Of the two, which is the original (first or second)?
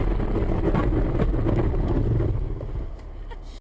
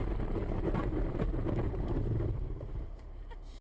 first